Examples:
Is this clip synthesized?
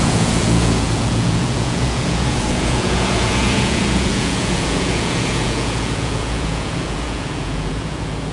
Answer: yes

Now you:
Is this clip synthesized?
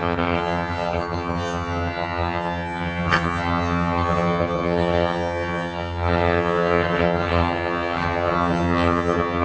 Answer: yes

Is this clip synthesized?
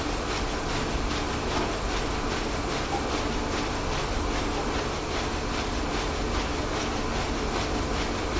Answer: no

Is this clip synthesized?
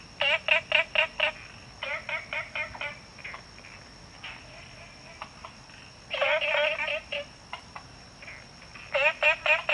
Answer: no